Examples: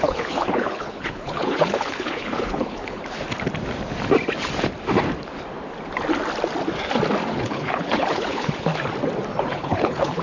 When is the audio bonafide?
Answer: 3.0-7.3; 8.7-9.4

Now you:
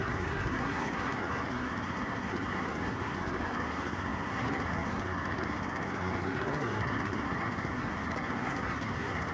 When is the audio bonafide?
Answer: none

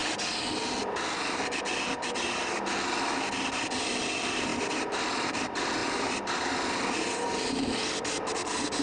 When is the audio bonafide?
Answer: 0.0-3.9; 4.5-5.0; 5.8-8.8

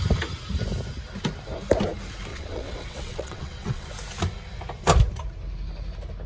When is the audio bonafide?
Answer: 0.0-2.3; 3.9-6.3

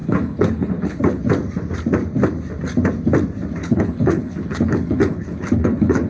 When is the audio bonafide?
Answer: 1.2-3.6

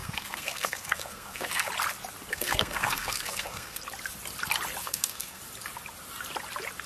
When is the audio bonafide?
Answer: 1.7-2.3; 3.8-4.8; 5.4-6.9

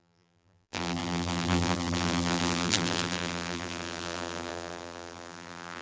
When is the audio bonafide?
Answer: none